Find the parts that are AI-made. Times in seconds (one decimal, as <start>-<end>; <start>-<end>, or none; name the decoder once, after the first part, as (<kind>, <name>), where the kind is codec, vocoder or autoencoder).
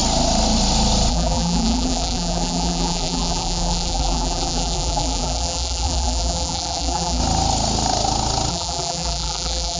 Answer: 1.1-7.2 (vocoder, BigVGAN v2); 8.5-9.8